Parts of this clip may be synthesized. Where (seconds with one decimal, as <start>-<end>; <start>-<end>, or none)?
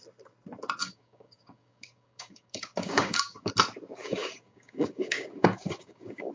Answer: 0.8-3.5; 4.0-6.3